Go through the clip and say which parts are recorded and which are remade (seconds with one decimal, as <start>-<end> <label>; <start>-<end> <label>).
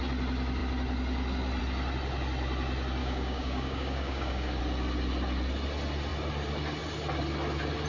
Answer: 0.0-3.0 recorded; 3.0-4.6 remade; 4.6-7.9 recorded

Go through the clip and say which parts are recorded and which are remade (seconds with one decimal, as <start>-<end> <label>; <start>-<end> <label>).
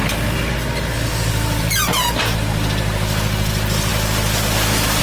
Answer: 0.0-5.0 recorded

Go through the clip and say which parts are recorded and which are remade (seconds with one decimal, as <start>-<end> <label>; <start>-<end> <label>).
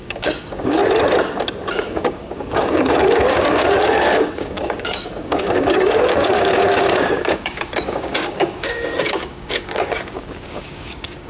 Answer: 0.0-0.8 remade; 0.8-1.7 recorded; 1.7-11.3 remade